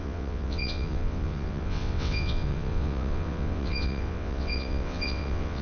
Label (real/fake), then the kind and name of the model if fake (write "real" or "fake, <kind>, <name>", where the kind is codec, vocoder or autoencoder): fake, vocoder, WaveNeXt